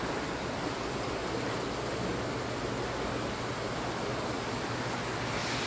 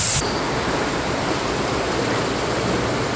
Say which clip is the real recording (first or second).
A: first